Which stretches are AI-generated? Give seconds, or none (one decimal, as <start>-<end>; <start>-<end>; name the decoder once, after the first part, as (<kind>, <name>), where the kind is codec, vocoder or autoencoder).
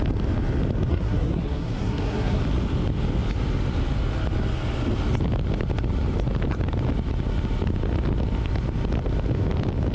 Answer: 0.9-2.4 (codec, SNAC)